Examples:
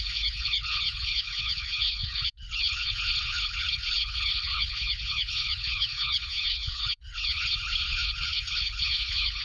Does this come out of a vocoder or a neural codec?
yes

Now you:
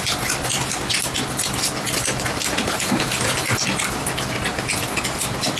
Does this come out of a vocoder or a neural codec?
no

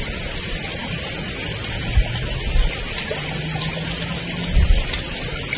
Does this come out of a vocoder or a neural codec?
no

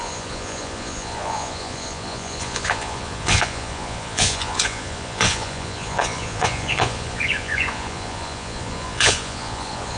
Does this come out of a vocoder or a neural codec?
yes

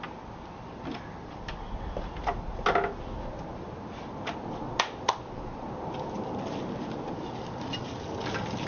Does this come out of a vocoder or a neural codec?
no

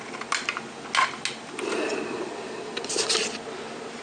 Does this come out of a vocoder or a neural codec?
no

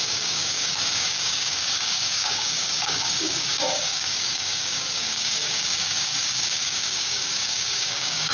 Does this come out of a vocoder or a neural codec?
yes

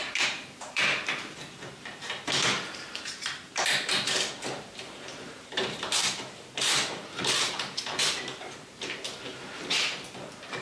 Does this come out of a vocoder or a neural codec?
yes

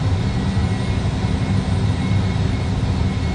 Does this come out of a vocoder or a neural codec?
no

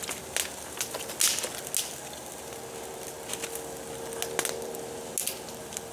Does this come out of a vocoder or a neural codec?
no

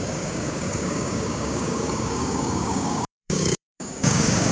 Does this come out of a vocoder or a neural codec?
yes